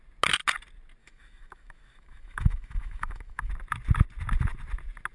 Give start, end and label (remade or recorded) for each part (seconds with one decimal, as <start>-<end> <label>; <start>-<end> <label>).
0.0-1.0 recorded; 1.0-3.5 remade; 3.5-5.1 recorded